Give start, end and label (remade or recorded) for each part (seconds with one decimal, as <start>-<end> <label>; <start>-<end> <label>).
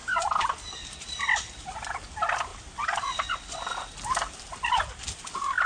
0.0-1.2 remade; 1.2-2.5 recorded; 2.5-5.2 remade; 5.2-5.7 recorded